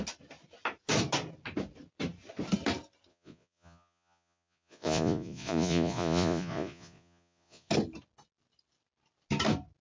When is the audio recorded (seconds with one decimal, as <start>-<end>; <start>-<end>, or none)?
0.0-3.1; 7.7-9.8